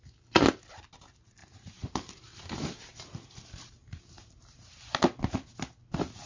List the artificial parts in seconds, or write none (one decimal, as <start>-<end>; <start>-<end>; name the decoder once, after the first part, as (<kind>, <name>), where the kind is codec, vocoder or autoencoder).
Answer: 1.4-5.2 (vocoder, BigVGAN v2)